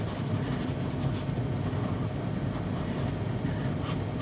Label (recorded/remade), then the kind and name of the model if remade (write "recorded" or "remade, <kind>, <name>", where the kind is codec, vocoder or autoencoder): recorded